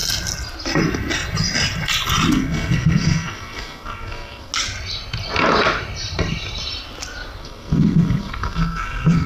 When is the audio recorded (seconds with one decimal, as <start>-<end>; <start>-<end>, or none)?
0.0-2.3; 4.5-7.4